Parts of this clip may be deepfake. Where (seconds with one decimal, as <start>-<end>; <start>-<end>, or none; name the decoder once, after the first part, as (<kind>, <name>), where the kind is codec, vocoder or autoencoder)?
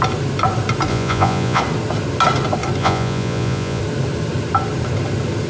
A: 0.9-1.6 (vocoder, Vocos); 2.8-3.8